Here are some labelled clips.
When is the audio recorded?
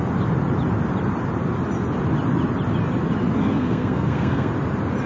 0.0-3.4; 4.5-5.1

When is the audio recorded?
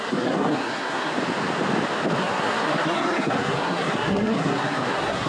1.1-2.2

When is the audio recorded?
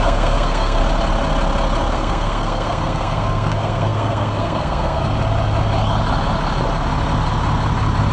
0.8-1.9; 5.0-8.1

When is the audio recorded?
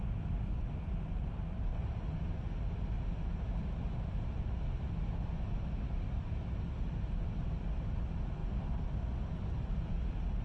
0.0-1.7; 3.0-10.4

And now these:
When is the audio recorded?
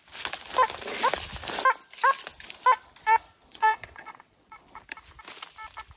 0.0-3.5; 4.6-6.0